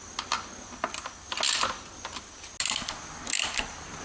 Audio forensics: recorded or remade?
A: recorded